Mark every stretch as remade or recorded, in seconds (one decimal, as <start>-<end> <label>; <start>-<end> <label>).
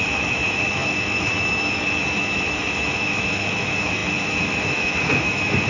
0.0-5.7 remade